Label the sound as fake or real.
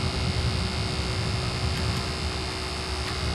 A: real